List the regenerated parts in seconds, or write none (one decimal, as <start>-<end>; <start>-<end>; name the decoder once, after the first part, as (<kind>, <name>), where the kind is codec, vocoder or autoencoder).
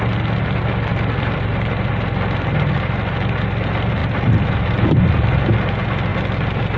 0.9-1.5 (vocoder, BigVGAN v2); 4.0-4.5; 6.1-6.8